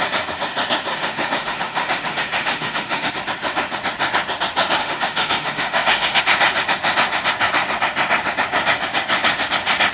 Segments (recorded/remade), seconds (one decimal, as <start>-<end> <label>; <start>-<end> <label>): 0.0-0.9 recorded; 0.9-3.1 remade; 3.1-4.8 recorded; 4.8-6.2 remade; 6.2-9.9 recorded